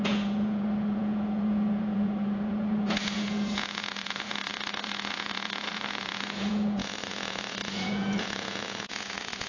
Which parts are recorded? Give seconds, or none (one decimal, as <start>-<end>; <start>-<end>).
none